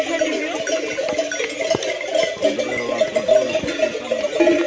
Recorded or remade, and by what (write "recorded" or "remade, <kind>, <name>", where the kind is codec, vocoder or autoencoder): recorded